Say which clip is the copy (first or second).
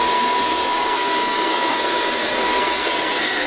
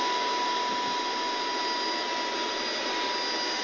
first